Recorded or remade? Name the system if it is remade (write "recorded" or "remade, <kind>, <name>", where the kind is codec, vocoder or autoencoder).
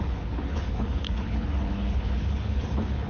remade, codec, HILCodec